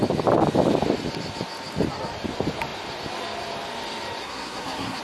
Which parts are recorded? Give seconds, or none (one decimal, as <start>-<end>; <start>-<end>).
0.0-4.2